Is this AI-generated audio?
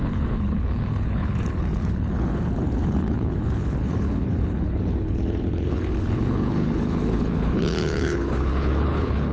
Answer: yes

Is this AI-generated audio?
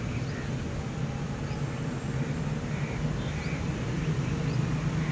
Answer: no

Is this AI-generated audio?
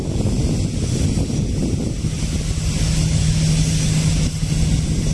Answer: no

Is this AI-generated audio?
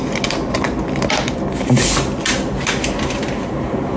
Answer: no